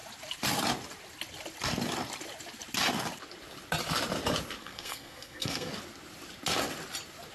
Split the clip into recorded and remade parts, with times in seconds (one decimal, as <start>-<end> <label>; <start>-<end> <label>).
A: 0.0-4.6 recorded; 4.6-5.7 remade; 5.7-7.3 recorded